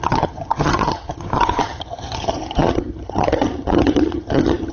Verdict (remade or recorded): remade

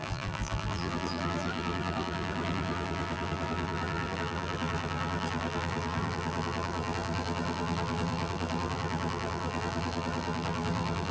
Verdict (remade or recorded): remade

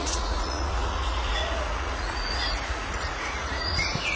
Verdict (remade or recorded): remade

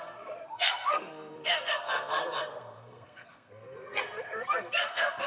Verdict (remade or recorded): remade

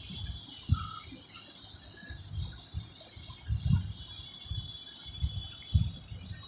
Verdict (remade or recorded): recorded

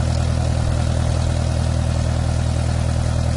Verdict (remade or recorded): recorded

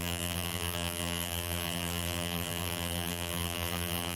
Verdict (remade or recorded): remade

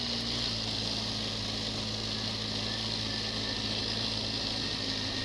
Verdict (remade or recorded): recorded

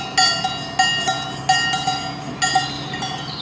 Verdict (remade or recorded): recorded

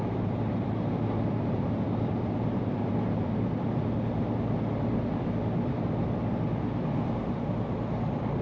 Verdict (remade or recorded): remade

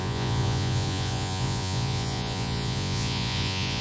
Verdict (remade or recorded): remade